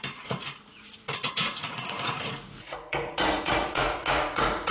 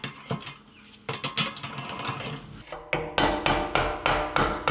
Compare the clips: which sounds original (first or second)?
second